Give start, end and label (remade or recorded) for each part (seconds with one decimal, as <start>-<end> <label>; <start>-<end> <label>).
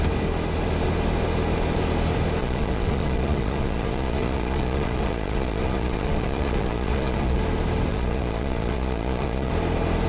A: 0.0-2.4 recorded; 2.4-7.4 remade; 7.4-7.9 recorded; 7.9-9.5 remade; 9.5-10.1 recorded